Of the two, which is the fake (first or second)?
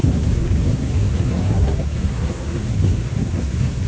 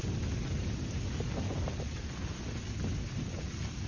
first